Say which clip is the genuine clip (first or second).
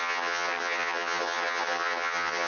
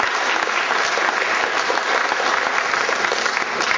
second